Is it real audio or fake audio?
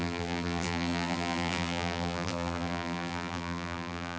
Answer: fake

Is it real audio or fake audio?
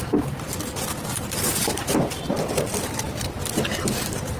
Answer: real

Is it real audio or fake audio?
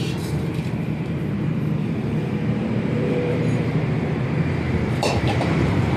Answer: fake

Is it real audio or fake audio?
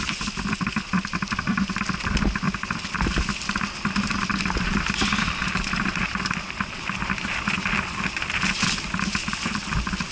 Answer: real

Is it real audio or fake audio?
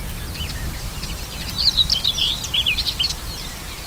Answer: fake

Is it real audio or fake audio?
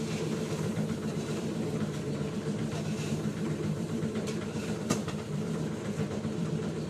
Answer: fake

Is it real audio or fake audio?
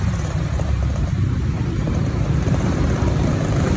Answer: fake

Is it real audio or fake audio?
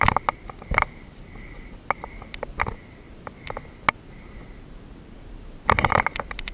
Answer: real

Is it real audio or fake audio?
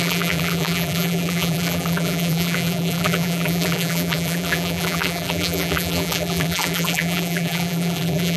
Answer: fake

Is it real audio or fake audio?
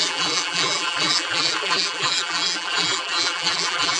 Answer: fake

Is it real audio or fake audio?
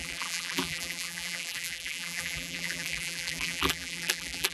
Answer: fake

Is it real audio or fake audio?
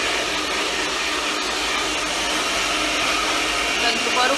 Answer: real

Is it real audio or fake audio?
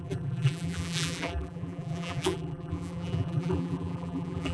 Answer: fake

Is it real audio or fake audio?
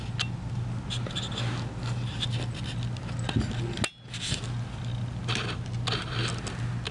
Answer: real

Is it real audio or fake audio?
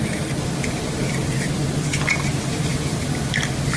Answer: real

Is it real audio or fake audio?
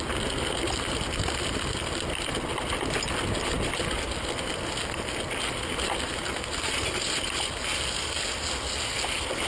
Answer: real